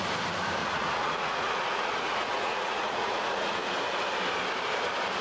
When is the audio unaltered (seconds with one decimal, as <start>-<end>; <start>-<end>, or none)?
0.0-0.6; 3.7-5.2